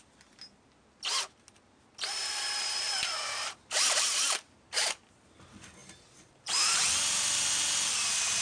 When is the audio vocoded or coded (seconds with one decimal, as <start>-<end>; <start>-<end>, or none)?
2.2-5.0; 5.8-6.9